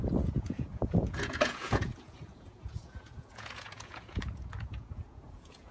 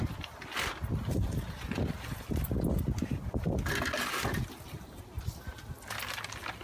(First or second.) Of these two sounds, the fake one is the first